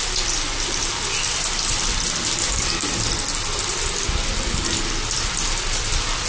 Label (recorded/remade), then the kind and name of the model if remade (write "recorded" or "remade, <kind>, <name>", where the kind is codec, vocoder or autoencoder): recorded